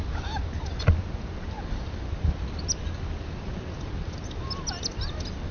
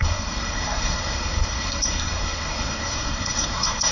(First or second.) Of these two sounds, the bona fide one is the first